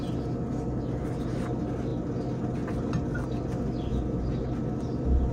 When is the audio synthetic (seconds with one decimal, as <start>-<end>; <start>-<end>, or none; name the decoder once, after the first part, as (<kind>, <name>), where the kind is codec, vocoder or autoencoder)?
none

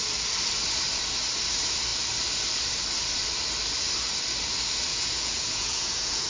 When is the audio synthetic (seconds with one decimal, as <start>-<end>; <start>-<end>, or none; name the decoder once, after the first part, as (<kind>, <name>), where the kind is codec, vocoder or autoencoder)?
4.9-6.3 (vocoder, Vocos)